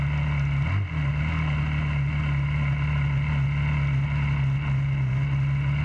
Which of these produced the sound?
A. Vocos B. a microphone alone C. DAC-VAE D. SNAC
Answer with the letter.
B